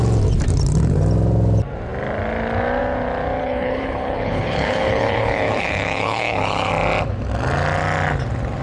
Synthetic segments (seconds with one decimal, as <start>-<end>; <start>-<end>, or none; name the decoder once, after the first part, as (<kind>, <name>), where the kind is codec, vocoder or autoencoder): 3.4-6.7 (codec, HILCodec)